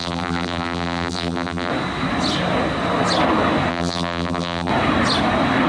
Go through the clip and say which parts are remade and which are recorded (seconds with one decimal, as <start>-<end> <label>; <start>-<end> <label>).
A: 0.0-1.7 remade; 1.7-3.7 recorded; 3.7-4.7 remade; 4.7-5.7 recorded